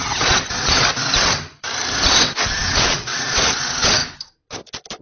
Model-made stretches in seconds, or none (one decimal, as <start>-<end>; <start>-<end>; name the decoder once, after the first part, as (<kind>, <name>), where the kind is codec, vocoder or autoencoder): 0.0-1.3 (vocoder, WaveNeXt); 1.9-4.0